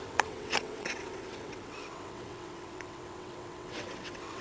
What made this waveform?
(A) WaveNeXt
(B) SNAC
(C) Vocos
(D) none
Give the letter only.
A